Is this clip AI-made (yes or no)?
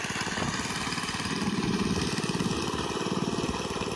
no